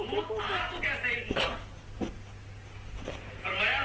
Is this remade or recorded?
recorded